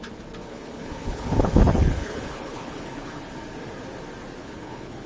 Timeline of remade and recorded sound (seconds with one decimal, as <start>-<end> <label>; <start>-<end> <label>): 0.0-0.4 recorded; 0.4-3.2 remade; 3.2-4.4 recorded; 4.4-5.1 remade

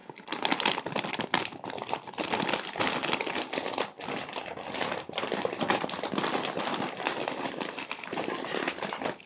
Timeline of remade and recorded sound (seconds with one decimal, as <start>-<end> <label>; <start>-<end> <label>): 0.0-9.3 recorded